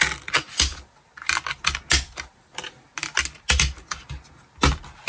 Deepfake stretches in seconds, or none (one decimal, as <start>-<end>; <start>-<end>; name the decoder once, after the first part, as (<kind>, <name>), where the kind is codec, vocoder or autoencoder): none